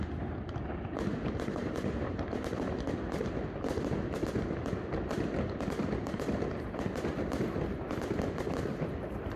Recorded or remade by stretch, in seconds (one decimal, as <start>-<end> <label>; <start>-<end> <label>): 0.0-1.6 recorded; 1.6-2.7 remade; 2.7-9.4 recorded